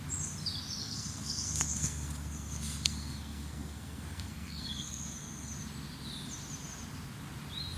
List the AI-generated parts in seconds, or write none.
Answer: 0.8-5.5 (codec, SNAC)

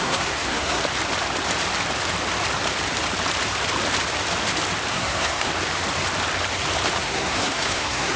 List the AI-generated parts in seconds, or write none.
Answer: 0.0-0.8 (codec, SNAC); 4.9-5.5; 6.9-8.2